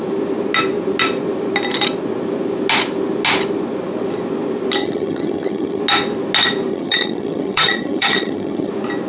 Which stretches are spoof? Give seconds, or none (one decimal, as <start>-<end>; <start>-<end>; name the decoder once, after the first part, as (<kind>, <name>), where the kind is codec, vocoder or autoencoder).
4.8-5.8 (vocoder, HiFi-GAN); 6.7-8.7